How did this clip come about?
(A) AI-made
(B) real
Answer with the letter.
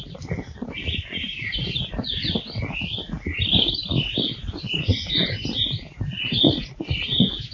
A